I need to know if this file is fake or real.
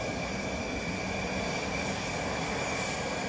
real